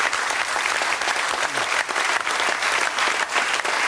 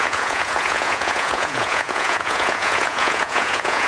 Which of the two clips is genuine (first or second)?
first